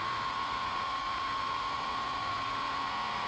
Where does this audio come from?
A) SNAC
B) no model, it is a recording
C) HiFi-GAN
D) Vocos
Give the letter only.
D